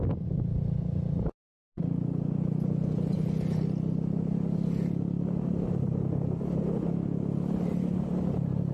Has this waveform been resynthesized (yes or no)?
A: no